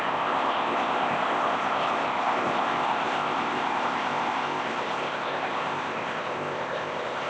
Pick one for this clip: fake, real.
fake